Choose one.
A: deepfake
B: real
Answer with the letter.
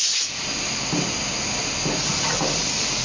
B